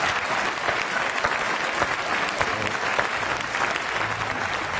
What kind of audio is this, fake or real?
real